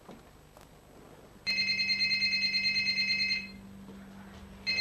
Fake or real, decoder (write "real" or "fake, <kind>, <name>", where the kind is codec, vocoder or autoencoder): real